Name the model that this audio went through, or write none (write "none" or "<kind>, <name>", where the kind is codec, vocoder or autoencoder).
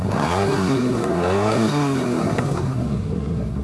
codec, SNAC